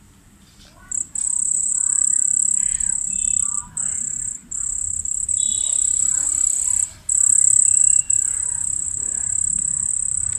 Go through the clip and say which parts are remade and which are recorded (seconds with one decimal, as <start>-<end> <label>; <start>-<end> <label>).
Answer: 0.0-7.8 remade; 7.8-9.9 recorded; 9.9-10.4 remade